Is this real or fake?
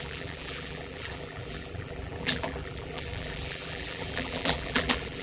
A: fake